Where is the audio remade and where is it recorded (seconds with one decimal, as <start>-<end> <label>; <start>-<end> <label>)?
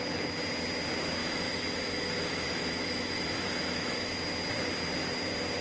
0.0-1.2 recorded; 1.2-4.1 remade; 4.1-5.6 recorded